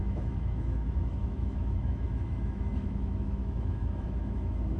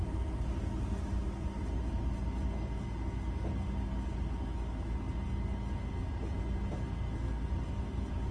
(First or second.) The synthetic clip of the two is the first